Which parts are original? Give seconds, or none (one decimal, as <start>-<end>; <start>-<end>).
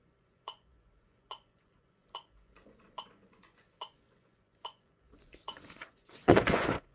none